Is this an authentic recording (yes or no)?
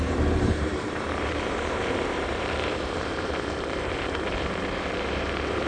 no